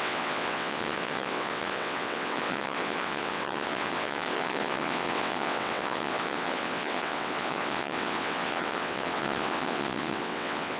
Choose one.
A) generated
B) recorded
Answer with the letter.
A